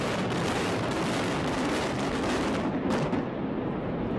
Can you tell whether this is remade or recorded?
recorded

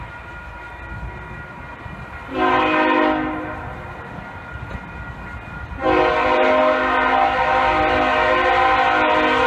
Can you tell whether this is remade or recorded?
recorded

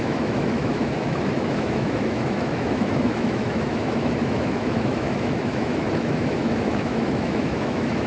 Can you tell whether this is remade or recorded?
remade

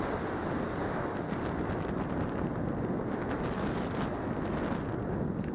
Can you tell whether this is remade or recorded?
recorded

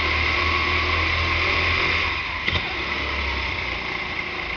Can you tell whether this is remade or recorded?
recorded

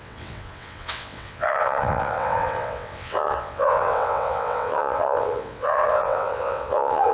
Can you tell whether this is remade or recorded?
remade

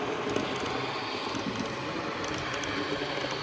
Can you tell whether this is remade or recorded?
recorded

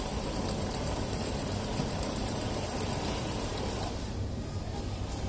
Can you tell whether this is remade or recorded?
remade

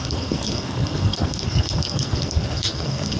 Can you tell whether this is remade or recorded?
remade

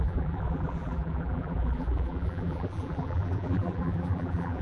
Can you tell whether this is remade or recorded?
remade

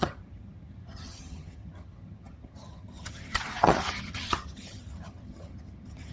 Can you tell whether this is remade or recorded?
remade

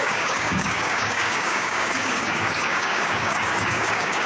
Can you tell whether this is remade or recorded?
remade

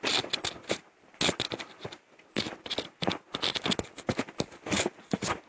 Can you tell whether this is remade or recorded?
recorded